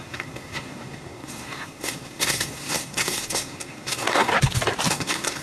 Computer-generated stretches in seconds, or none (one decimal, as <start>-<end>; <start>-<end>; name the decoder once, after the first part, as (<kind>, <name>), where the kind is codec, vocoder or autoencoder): 0.0-4.3 (codec, SNAC); 4.9-5.4